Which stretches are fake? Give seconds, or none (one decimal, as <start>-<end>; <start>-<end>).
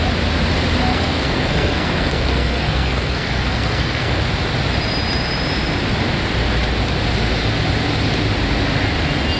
0.9-4.2